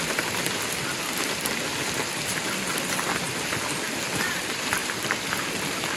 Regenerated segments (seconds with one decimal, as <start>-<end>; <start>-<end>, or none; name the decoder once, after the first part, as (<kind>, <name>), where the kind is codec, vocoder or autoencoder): none